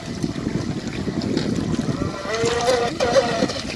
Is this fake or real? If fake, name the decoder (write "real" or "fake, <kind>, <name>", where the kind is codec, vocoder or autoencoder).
real